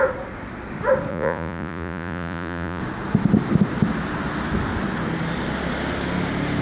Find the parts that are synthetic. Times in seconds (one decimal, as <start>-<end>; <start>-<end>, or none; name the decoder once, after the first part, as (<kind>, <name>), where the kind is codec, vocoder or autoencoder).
1.1-2.8 (vocoder, Vocos)